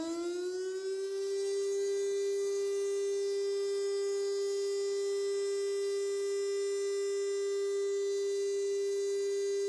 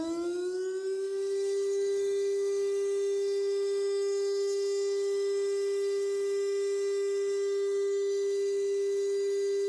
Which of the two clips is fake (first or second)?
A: second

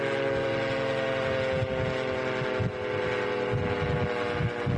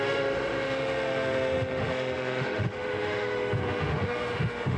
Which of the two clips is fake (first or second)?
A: second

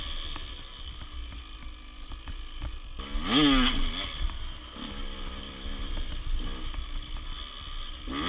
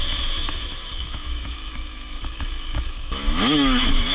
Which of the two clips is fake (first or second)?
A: second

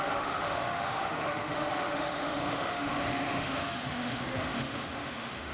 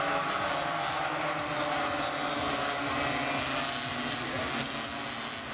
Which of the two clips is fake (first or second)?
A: first